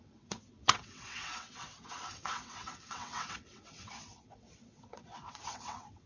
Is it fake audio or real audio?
fake